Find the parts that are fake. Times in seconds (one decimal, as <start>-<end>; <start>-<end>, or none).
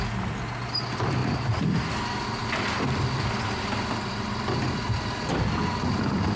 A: 1.2-1.9; 4.1-5.5